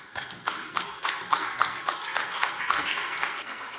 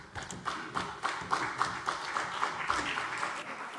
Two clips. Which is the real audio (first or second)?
second